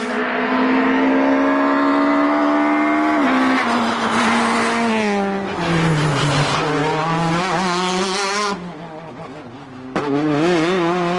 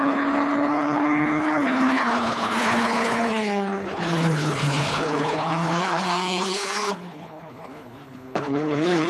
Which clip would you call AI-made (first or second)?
second